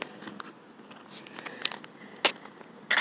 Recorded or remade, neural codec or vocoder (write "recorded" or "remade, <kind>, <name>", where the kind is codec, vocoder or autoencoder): recorded